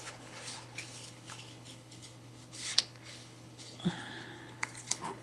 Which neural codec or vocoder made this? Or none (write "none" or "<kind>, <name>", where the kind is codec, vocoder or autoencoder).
codec, HILCodec